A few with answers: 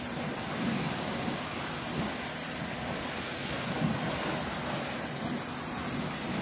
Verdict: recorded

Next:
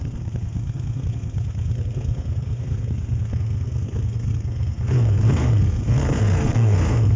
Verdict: remade